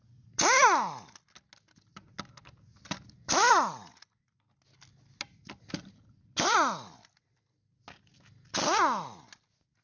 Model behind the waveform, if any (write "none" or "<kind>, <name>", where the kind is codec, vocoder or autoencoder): none